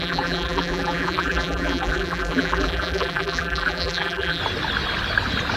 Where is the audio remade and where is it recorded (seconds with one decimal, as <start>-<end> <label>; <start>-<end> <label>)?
0.0-4.4 remade; 4.4-5.6 recorded